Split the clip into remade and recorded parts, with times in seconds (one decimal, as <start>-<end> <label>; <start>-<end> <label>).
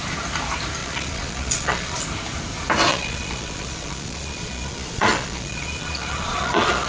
0.0-0.8 recorded; 0.8-2.0 remade; 2.0-2.9 recorded; 2.9-6.9 remade